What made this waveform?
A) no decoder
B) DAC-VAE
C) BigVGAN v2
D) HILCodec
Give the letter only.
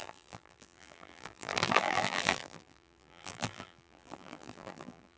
C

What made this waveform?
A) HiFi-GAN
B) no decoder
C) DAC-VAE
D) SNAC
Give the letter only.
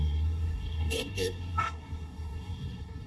D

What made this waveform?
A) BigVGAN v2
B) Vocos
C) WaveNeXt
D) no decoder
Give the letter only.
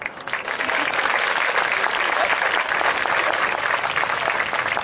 D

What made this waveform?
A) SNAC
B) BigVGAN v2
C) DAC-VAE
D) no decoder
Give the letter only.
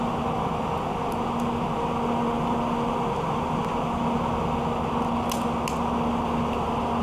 D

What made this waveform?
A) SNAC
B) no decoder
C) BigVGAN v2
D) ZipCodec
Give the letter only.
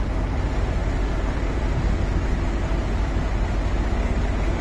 B